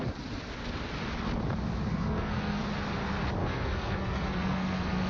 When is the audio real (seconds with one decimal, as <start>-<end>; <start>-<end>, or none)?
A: 0.0-1.9; 2.6-3.4